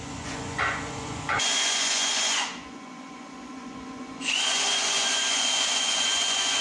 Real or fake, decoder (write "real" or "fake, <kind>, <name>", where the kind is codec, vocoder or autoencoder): fake, vocoder, Vocos